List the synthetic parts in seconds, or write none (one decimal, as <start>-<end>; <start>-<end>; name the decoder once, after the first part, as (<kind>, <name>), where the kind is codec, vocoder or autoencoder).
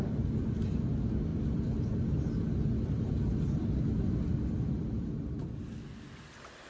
none